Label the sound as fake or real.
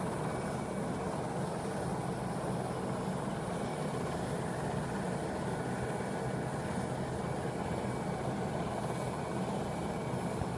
real